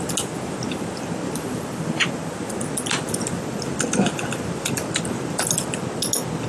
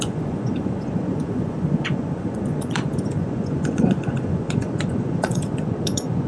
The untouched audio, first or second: first